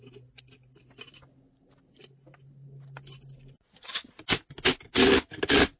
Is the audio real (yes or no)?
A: yes